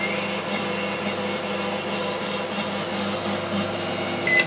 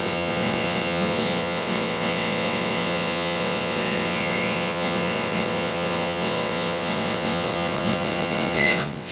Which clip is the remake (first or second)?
second